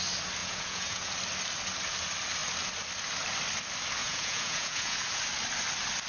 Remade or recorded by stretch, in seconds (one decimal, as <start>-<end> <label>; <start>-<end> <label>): 0.0-0.4 recorded; 0.4-1.1 remade; 1.1-4.0 recorded; 4.0-5.2 remade; 5.2-6.1 recorded